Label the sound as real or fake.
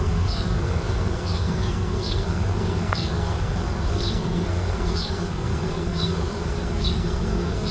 fake